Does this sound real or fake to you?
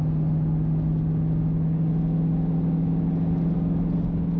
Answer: real